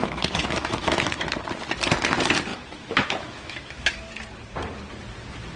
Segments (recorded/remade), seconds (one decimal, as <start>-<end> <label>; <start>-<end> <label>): 0.0-1.3 remade; 1.3-2.5 recorded; 2.5-4.0 remade; 4.0-5.6 recorded